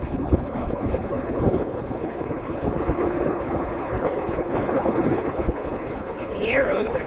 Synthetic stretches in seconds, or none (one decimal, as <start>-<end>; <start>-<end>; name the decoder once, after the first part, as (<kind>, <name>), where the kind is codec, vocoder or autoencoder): 0.0-7.1 (codec, HILCodec)